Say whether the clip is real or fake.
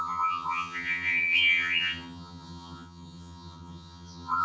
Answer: fake